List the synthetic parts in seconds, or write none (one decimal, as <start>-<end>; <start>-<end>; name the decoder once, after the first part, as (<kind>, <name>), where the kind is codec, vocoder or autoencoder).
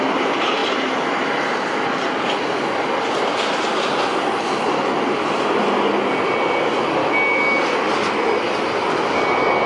7.0-7.6 (autoencoder, DAC-VAE)